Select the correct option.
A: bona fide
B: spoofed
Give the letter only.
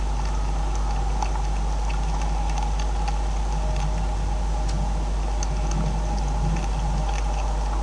A